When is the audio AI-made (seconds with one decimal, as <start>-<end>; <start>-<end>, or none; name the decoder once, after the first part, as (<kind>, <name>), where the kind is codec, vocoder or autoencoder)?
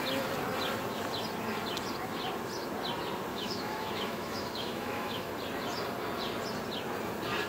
3.3-5.3 (autoencoder, DAC-VAE)